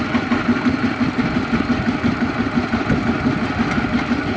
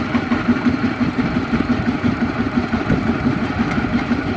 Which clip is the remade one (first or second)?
second